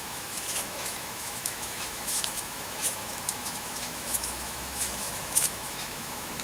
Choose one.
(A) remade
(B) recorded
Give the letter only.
A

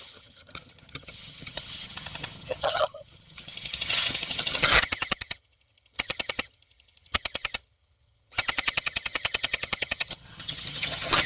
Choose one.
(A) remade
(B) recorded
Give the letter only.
A